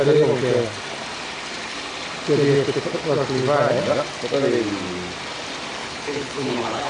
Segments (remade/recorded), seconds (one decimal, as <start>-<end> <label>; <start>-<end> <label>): 0.0-5.8 recorded; 5.8-6.9 remade